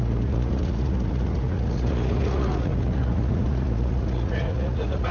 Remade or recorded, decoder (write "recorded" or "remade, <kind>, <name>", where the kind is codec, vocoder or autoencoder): remade, vocoder, Vocos